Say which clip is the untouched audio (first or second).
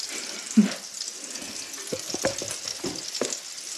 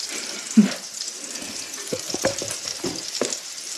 first